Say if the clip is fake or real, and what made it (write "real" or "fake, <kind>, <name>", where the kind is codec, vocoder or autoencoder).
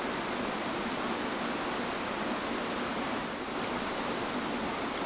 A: real